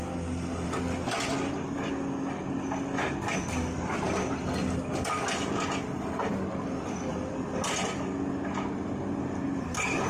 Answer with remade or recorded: recorded